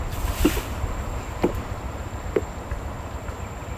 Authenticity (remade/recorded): recorded